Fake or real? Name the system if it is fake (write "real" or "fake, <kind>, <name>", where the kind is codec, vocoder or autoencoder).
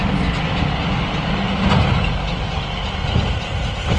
real